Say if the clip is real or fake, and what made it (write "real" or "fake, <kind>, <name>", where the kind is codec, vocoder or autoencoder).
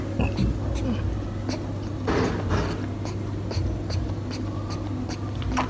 real